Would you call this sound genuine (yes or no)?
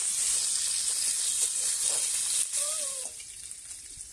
yes